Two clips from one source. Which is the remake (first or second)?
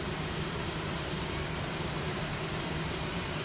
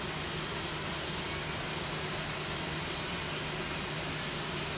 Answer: first